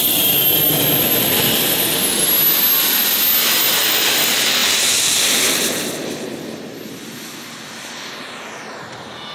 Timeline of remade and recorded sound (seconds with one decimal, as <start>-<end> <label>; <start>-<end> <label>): 0.0-9.3 recorded